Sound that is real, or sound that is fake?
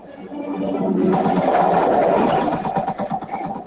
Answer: real